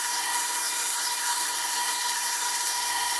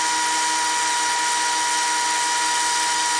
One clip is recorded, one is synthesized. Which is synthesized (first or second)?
first